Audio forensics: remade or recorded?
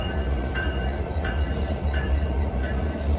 remade